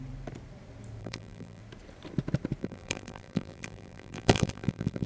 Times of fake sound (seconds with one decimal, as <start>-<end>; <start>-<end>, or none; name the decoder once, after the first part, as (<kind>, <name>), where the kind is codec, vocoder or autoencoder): 1.0-1.6 (vocoder, BigVGAN v2); 2.6-5.1